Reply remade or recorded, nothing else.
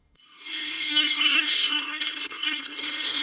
remade